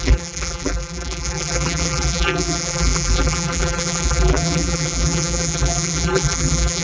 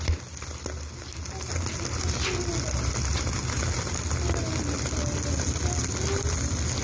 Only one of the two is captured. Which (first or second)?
second